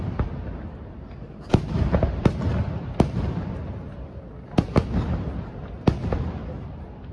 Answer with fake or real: real